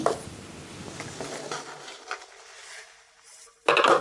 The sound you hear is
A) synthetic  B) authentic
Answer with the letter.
B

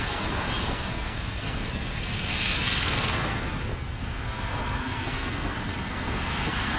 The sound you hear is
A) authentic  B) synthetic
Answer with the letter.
B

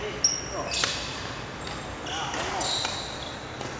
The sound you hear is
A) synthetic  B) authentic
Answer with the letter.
B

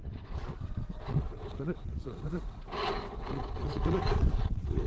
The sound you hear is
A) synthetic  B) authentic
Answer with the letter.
A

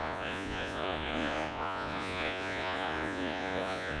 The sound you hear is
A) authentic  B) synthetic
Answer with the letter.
B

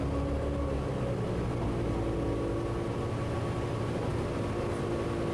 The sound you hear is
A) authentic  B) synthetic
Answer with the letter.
A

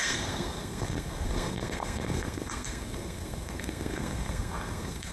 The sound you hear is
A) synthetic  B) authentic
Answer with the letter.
A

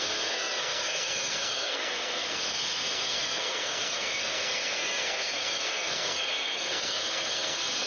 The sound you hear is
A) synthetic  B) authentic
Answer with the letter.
A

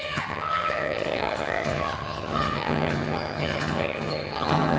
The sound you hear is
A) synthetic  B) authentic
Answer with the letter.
A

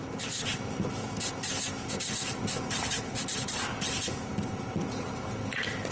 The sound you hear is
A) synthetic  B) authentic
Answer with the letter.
B